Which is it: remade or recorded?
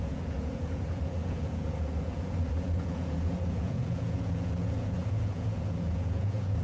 remade